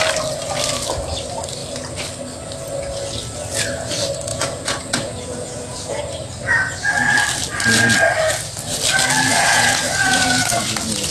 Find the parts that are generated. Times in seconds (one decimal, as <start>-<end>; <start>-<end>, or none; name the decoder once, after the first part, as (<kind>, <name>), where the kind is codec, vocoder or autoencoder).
4.3-6.0 (vocoder, Vocos); 9.3-10.5